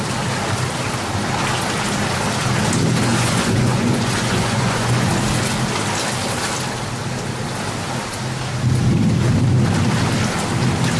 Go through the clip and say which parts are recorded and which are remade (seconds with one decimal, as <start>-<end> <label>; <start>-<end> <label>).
0.0-3.1 recorded; 3.1-5.1 remade; 5.1-11.0 recorded